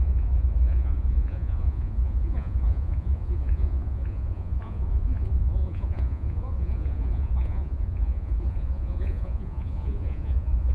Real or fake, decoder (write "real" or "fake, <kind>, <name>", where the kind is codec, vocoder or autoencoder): fake, vocoder, Vocos